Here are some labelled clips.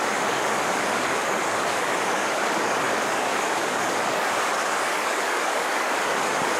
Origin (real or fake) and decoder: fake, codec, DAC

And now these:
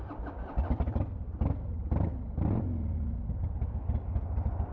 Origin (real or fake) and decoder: real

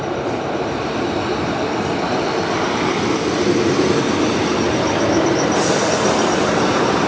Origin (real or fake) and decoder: fake, vocoder, BigVGAN v2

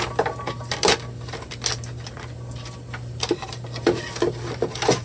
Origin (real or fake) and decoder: real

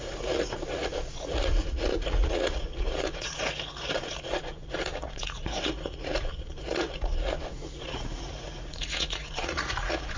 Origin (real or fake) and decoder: fake, vocoder, Vocos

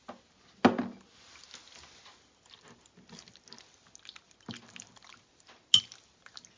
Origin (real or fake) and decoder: real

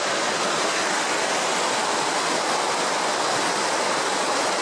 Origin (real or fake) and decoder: real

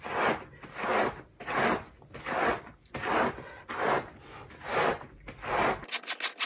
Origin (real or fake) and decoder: real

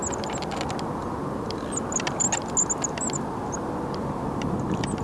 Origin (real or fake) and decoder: real